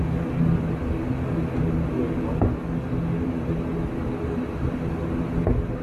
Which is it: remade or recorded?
recorded